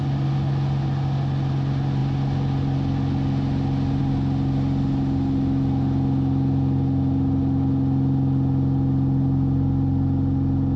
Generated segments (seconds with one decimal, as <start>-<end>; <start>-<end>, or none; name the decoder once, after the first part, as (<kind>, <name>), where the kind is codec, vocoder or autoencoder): none